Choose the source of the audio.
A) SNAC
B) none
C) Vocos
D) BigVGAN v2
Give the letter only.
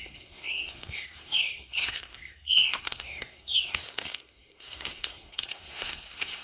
A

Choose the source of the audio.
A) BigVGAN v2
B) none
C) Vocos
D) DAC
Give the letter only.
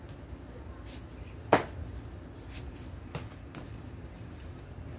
B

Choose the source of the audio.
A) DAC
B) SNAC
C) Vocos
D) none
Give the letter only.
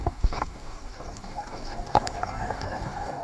A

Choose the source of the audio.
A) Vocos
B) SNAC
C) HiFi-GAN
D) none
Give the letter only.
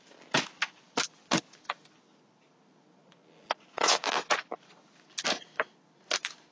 D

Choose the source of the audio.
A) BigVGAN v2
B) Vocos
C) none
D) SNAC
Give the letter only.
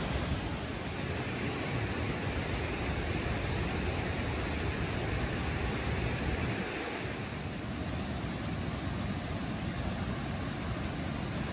C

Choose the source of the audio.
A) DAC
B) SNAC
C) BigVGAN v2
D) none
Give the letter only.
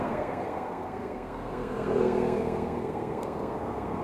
B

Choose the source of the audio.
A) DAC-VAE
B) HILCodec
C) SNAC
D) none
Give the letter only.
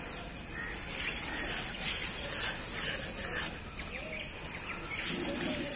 D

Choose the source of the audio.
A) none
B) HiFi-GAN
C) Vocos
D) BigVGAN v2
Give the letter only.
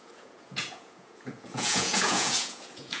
C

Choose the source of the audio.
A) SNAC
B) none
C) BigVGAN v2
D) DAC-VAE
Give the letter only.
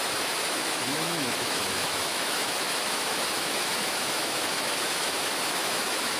D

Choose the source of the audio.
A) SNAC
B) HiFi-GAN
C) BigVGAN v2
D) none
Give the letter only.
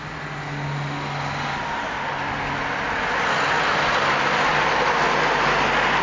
D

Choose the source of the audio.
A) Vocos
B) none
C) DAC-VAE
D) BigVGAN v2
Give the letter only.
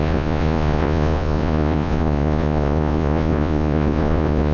A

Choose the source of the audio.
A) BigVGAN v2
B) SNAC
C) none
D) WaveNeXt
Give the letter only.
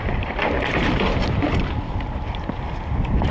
A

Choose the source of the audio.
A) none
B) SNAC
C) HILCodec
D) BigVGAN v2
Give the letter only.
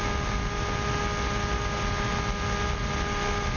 A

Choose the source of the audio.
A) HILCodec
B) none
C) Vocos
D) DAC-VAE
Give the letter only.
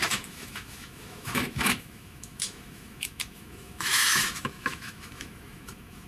D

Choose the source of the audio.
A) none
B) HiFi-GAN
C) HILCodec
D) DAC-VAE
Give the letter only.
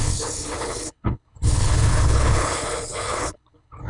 C